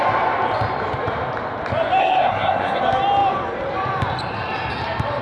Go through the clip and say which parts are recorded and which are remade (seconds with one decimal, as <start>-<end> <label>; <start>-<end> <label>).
0.0-2.0 recorded; 2.0-2.8 remade; 2.8-5.2 recorded